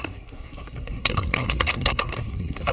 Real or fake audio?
fake